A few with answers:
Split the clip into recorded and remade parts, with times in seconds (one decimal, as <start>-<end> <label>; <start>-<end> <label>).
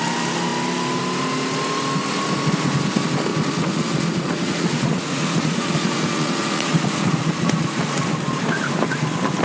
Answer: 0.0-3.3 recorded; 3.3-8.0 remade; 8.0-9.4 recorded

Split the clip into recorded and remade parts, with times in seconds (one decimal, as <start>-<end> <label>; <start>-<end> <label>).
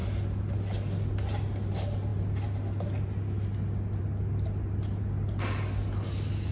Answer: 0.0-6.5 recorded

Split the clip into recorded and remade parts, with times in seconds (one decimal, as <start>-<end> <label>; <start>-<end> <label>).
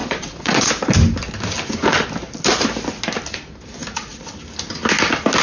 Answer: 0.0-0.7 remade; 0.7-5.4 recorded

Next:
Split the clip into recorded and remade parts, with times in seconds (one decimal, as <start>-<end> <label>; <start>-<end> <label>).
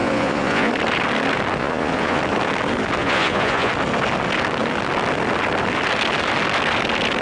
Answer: 0.0-0.7 remade; 0.7-1.6 recorded; 1.6-2.2 remade; 2.2-3.0 recorded; 3.0-3.7 remade; 3.7-7.2 recorded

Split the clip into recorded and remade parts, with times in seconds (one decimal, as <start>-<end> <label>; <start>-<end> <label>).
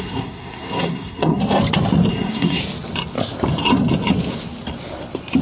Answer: 0.0-1.4 remade; 1.4-2.1 recorded; 2.1-2.6 remade; 2.6-5.4 recorded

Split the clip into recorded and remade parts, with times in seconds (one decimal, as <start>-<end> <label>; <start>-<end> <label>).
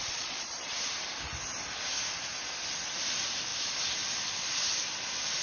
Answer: 0.0-0.7 remade; 0.7-5.4 recorded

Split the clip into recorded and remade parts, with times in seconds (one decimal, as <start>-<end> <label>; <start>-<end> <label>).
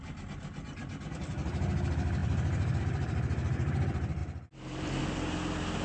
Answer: 0.0-4.2 recorded; 4.2-5.0 remade; 5.0-5.8 recorded